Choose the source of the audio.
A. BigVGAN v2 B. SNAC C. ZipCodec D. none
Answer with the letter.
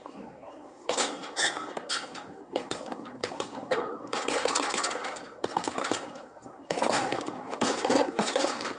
B